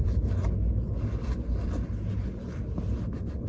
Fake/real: real